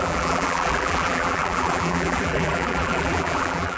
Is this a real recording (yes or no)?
no